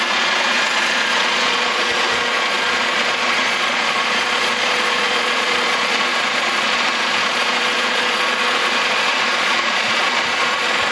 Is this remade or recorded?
remade